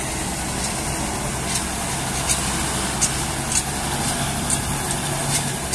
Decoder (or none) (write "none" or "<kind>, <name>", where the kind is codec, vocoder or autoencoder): none